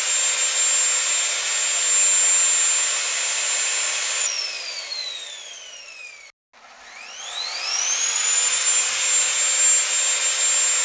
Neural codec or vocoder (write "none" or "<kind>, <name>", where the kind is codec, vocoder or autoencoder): none